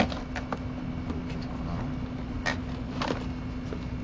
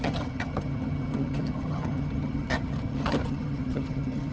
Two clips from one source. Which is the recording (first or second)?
first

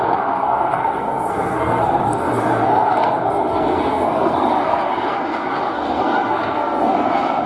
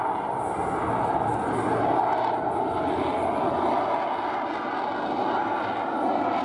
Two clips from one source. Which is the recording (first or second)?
second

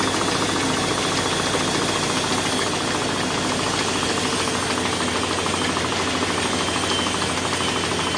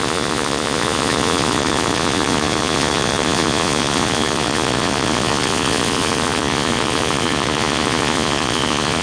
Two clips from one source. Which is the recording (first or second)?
first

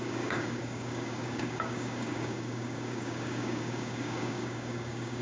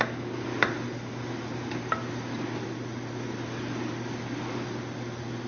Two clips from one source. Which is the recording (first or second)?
second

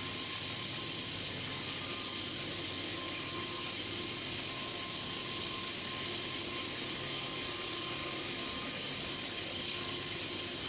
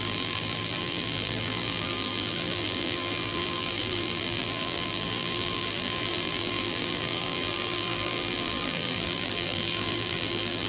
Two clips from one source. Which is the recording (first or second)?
first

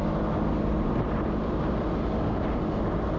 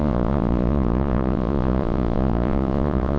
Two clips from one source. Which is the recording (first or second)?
first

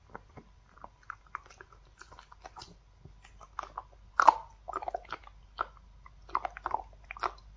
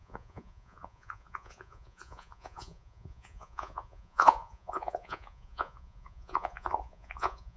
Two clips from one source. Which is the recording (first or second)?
first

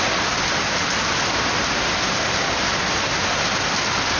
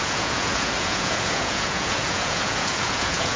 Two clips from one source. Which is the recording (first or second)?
first